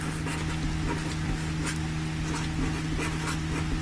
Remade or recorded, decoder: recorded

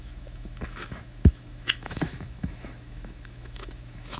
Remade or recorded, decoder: remade, autoencoder, DAC-VAE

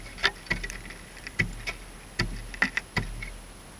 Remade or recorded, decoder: recorded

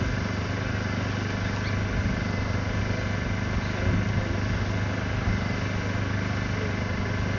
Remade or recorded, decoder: recorded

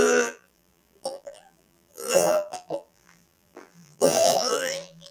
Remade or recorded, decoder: remade, vocoder, BigVGAN v2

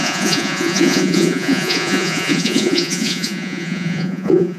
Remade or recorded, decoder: remade, vocoder, Vocos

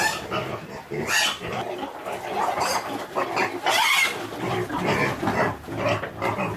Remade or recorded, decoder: recorded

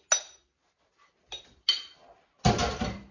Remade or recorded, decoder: recorded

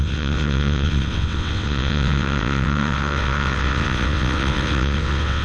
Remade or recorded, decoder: remade, vocoder, WaveNeXt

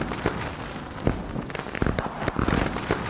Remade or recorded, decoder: recorded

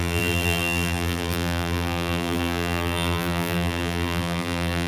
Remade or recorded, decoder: remade, vocoder, BigVGAN v2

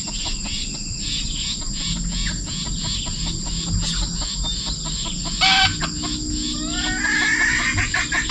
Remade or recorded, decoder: recorded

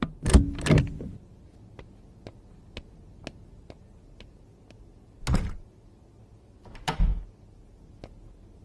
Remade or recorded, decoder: recorded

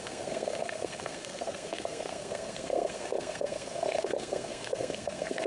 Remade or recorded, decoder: remade, codec, SNAC